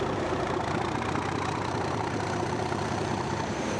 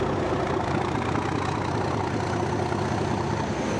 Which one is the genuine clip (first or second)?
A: second